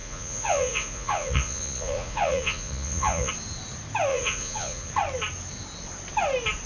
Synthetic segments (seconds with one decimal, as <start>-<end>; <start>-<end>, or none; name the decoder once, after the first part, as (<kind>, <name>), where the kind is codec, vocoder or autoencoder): 0.0-3.3 (vocoder, Vocos); 4.1-4.9